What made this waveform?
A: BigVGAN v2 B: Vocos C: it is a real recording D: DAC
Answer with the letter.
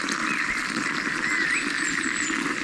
C